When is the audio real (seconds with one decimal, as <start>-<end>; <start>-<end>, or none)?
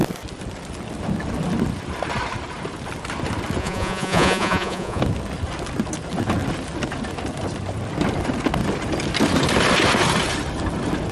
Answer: 0.0-3.6; 5.0-11.1